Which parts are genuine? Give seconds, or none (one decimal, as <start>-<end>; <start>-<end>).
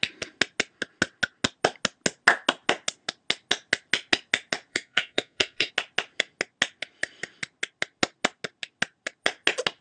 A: 0.0-4.7; 5.7-9.8